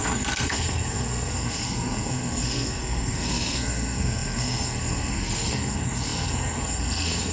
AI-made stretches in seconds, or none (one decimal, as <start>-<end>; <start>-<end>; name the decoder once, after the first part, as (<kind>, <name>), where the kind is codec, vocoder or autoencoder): 0.0-7.3 (codec, SNAC)